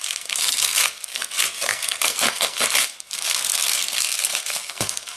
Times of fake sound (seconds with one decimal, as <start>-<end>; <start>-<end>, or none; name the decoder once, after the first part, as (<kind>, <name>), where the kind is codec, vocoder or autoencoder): 0.0-5.2 (codec, SNAC)